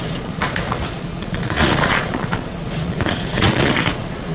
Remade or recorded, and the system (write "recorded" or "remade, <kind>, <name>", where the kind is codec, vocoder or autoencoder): remade, vocoder, Vocos